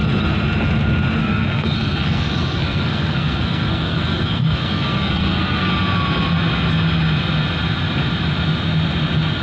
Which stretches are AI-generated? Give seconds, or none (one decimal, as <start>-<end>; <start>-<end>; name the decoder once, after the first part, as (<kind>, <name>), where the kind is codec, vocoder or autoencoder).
1.2-5.7 (codec, SNAC)